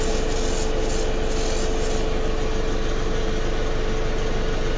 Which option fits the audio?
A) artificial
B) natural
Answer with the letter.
B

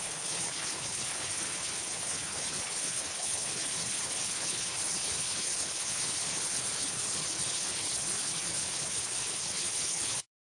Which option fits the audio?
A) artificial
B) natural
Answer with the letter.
A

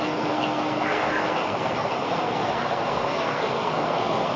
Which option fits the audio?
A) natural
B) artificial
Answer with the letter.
B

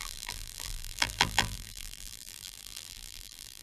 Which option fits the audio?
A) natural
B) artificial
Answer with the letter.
B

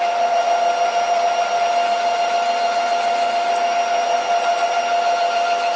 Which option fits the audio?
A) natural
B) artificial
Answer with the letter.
A